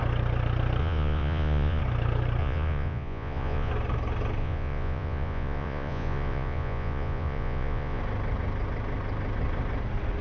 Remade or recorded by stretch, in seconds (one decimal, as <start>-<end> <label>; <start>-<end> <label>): 0.0-0.8 recorded; 0.8-1.8 remade; 1.8-2.4 recorded; 2.4-3.7 remade; 3.7-4.4 recorded; 4.4-8.0 remade; 8.0-10.2 recorded